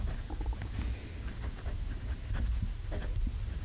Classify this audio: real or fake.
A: real